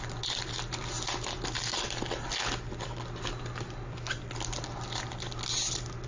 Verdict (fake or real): real